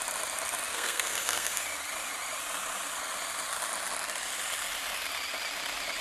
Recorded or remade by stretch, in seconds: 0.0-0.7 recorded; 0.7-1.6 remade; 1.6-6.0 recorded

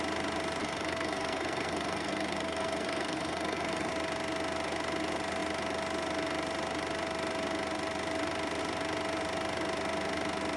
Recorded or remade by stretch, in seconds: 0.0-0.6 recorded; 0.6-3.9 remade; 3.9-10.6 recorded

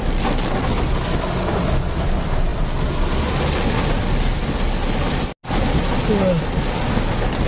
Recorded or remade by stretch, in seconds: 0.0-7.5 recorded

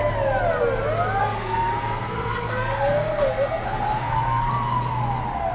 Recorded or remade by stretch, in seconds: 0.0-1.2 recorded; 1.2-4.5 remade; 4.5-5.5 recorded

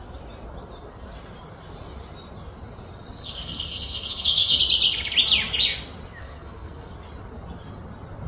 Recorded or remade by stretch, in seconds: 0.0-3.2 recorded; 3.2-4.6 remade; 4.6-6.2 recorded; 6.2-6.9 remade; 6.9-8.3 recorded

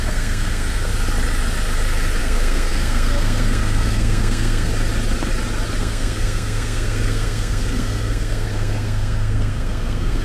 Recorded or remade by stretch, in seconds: 0.0-0.9 remade; 0.9-2.2 recorded; 2.2-4.7 remade; 4.7-5.8 recorded; 5.8-10.2 remade

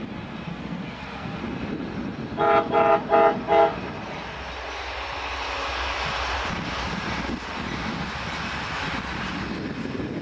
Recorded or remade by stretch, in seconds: 0.0-0.5 recorded; 0.5-1.4 remade; 1.4-10.2 recorded